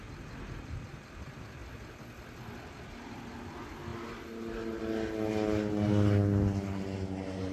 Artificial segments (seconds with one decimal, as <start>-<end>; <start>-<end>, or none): none